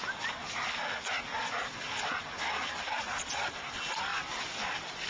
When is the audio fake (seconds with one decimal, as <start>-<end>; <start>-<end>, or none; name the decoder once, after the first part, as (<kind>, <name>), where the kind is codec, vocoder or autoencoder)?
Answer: none